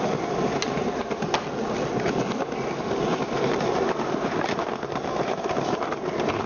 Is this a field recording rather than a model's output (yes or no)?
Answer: yes